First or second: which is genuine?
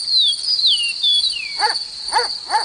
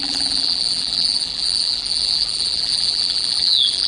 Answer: first